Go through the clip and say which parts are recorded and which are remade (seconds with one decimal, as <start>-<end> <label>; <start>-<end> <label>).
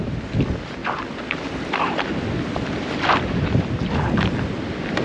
0.0-5.0 recorded